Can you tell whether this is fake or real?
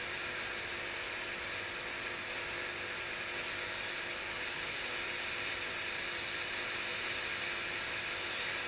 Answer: real